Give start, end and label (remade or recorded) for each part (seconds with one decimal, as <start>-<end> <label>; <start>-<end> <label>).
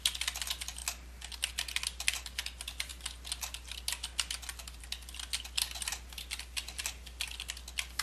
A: 0.0-8.0 recorded